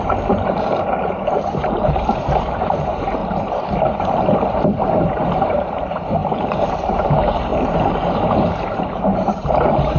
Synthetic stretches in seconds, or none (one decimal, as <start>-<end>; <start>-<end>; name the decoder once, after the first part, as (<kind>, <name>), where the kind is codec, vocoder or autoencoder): 0.0-3.2 (vocoder, BigVGAN v2); 4.9-10.0